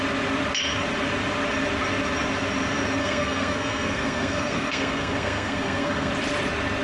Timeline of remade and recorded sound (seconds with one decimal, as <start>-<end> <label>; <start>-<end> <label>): 0.0-3.0 recorded; 3.0-6.1 remade; 6.1-6.8 recorded